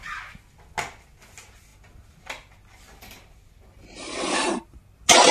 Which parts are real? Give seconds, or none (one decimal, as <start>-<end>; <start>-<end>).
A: 0.0-5.3

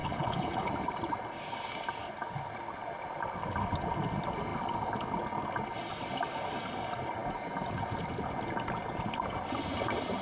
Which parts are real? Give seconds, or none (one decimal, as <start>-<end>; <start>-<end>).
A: 0.7-10.2